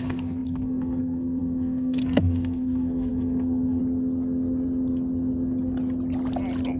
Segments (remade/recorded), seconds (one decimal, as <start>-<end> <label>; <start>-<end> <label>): 0.0-3.8 remade; 3.8-6.8 recorded